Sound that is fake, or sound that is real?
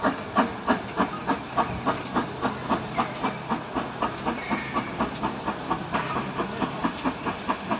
real